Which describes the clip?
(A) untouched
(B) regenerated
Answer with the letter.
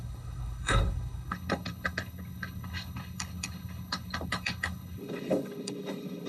B